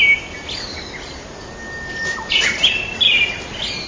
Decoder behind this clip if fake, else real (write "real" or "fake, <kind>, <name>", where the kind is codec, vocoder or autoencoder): real